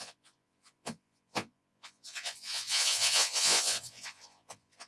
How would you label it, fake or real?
fake